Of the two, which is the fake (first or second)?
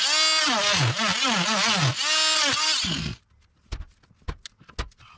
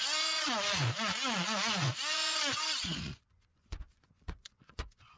second